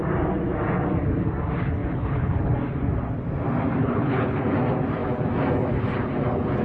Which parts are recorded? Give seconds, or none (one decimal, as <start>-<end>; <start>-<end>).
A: 0.0-1.8; 2.5-3.8; 4.5-6.6